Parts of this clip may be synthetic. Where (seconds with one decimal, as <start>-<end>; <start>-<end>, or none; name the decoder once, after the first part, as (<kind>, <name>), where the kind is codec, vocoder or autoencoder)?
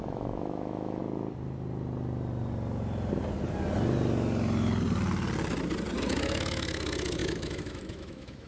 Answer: 0.0-1.0 (autoencoder, DAC-VAE); 6.1-8.5